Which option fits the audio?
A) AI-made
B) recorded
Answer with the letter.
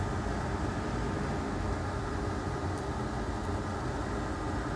B